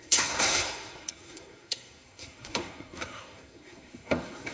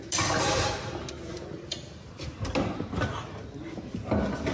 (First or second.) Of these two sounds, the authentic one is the second